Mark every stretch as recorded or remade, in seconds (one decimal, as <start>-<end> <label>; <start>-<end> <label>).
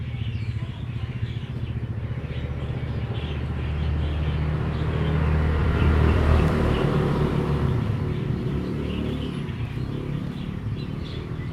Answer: 0.0-5.6 recorded; 5.6-8.4 remade; 8.4-10.2 recorded; 10.2-11.5 remade